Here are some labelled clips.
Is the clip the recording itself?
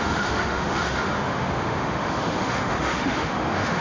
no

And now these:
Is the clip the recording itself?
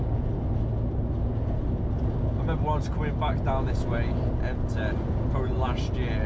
yes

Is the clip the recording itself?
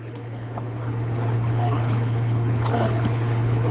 no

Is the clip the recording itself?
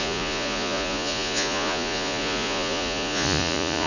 no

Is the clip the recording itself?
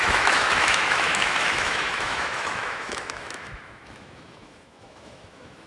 no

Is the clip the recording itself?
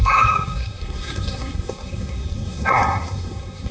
no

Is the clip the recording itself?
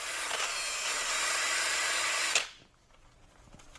yes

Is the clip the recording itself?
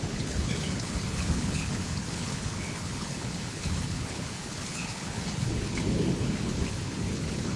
no